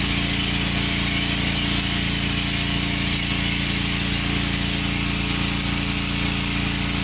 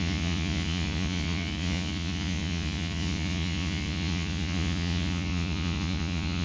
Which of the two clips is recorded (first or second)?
first